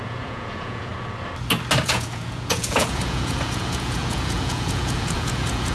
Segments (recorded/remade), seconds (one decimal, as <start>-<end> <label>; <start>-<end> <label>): 0.0-0.9 remade; 0.9-1.8 recorded; 1.8-5.7 remade